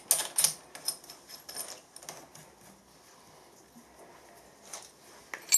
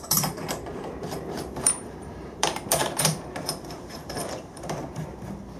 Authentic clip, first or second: first